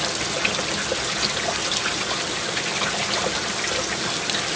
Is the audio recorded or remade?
recorded